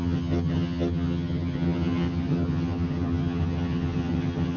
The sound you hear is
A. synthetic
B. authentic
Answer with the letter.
A